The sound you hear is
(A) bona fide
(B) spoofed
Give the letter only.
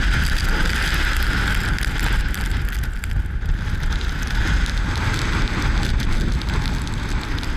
A